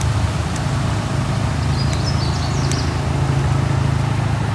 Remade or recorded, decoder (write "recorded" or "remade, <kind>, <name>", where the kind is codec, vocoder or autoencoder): recorded